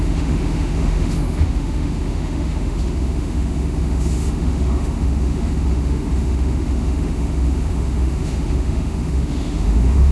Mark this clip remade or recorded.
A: remade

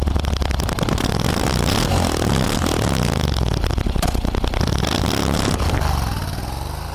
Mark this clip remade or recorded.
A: recorded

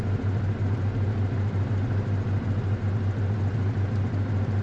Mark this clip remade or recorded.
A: recorded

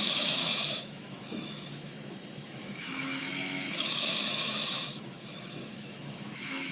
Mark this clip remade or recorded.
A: remade